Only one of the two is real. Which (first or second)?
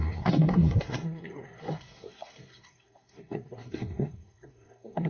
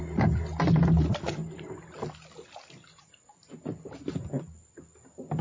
second